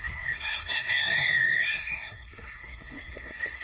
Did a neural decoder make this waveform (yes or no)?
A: yes